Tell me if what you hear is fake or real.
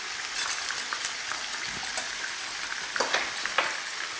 real